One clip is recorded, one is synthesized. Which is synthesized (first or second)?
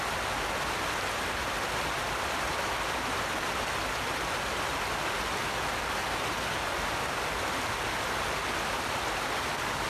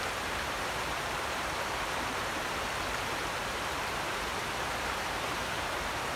second